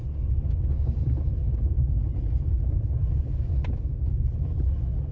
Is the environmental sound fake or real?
real